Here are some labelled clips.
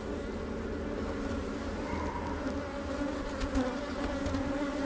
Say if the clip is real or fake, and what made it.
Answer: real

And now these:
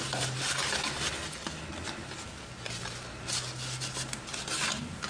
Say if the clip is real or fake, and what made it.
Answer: real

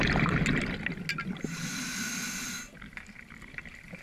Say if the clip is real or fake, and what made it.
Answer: real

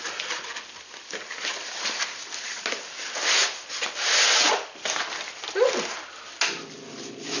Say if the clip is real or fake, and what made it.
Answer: real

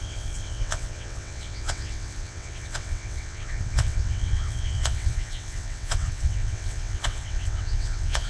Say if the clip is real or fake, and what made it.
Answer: fake, vocoder, WaveNeXt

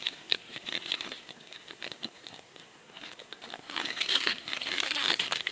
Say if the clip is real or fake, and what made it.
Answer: fake, codec, SNAC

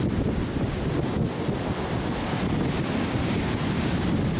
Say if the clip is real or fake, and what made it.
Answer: real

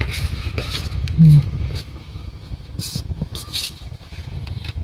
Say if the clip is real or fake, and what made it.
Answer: fake, autoencoder, DAC-VAE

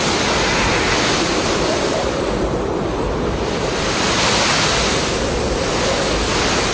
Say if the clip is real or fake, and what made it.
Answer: real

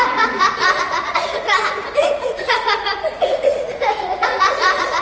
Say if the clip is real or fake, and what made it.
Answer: fake, vocoder, Vocos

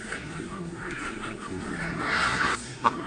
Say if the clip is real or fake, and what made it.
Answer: fake, codec, SNAC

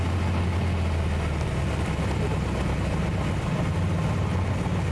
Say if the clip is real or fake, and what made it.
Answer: real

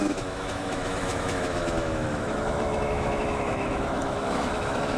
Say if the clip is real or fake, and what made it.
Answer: fake, autoencoder, DAC-VAE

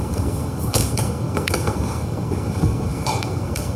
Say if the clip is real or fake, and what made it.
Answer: fake, codec, SNAC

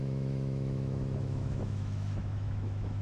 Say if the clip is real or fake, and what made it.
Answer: fake, autoencoder, DAC-VAE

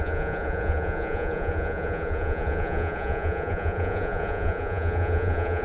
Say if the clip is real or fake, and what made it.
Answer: fake, vocoder, Vocos